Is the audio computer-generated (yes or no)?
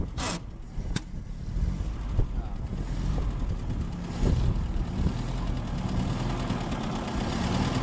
no